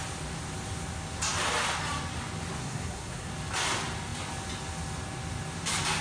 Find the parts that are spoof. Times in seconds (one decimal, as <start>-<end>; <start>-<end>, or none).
2.6-3.3